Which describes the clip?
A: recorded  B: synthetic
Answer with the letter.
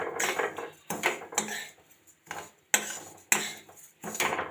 A